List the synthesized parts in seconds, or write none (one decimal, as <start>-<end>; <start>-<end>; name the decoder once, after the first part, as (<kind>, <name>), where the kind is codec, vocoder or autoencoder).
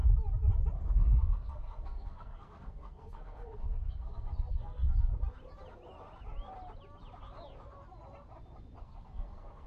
0.8-5.1 (codec, SNAC); 8.8-9.7